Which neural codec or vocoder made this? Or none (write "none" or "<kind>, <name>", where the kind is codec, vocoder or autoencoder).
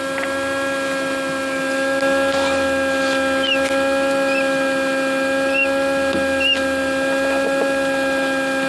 none